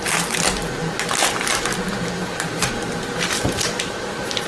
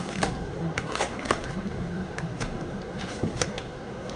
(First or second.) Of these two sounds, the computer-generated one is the second